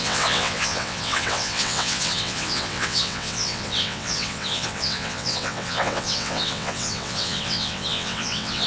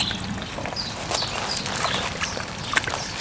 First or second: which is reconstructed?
first